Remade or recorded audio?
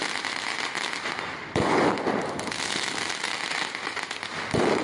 recorded